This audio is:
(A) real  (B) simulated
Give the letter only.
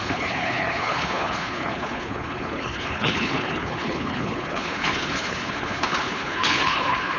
B